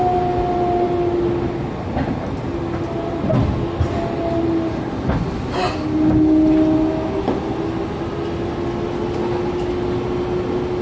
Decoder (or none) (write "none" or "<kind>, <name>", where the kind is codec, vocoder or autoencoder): none